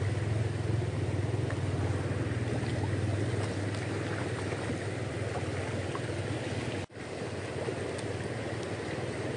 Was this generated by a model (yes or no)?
no